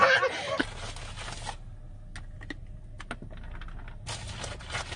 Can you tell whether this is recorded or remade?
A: recorded